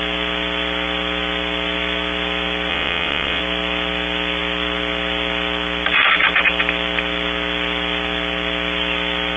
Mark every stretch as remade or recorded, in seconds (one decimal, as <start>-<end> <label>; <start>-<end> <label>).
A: 0.0-2.7 recorded; 2.7-3.4 remade; 3.4-9.4 recorded